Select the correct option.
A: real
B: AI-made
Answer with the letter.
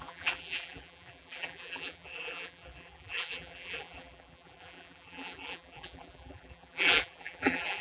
B